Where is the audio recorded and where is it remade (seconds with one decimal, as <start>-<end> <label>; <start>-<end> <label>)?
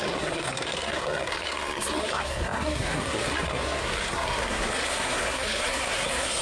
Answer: 0.0-6.4 remade